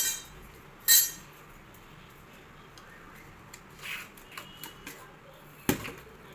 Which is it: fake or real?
real